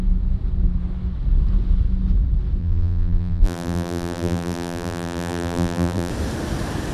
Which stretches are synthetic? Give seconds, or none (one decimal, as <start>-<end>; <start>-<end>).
2.6-6.1